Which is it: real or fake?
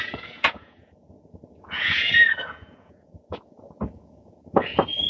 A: fake